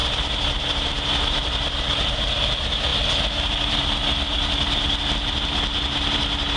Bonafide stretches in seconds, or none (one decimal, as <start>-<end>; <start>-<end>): 2.1-6.6